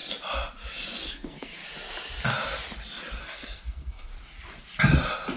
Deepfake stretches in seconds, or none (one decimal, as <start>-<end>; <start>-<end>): 1.1-1.6; 3.2-4.1